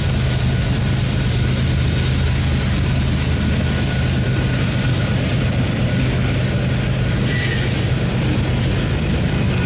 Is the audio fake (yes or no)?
no